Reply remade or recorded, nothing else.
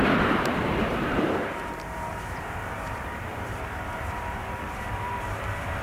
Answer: remade